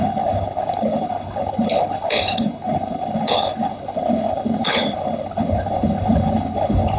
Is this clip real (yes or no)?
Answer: no